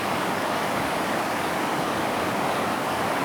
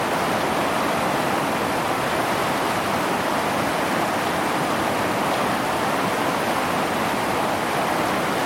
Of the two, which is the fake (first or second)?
first